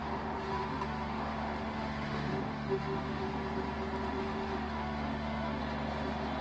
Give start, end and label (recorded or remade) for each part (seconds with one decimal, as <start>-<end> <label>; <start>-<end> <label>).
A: 0.0-3.3 remade; 3.3-4.2 recorded; 4.2-5.6 remade; 5.6-6.4 recorded